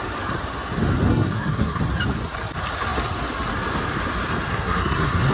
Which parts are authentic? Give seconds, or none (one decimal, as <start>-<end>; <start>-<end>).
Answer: 0.0-1.1; 1.8-4.5